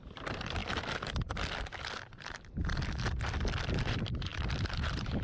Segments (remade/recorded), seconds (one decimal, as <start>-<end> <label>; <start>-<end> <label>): 0.0-0.6 remade; 0.6-3.7 recorded; 3.7-5.2 remade